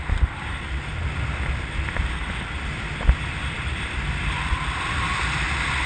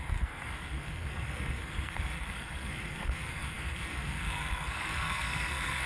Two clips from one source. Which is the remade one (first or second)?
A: second